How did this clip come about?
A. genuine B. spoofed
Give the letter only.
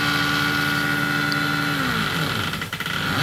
A